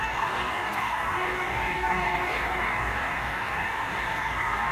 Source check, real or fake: fake